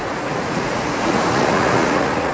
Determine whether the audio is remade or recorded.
remade